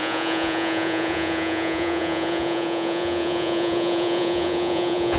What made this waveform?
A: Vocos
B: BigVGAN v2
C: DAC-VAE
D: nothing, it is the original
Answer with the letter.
A